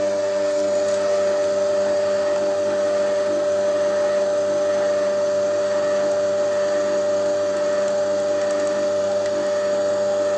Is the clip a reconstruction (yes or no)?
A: no